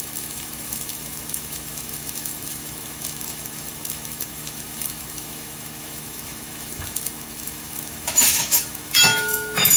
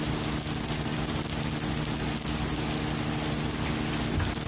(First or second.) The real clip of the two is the second